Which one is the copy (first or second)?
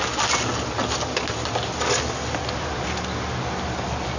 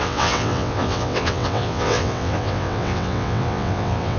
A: second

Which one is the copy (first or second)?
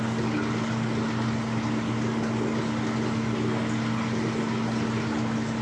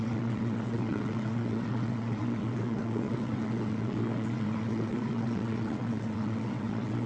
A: second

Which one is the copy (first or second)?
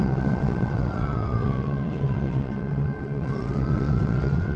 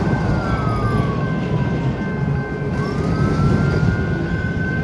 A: first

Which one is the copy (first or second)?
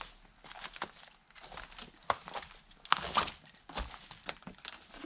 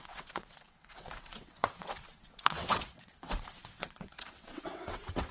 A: second